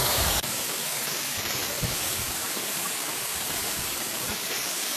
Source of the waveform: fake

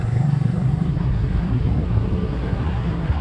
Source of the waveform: fake